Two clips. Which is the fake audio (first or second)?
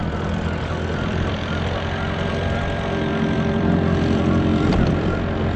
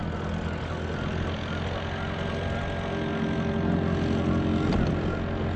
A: first